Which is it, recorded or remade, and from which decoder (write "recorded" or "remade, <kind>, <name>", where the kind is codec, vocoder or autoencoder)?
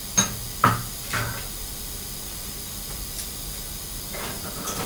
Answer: recorded